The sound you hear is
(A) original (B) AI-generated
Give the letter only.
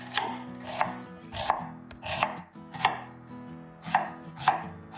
A